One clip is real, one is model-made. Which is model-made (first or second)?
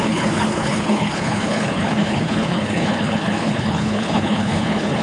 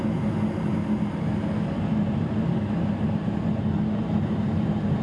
first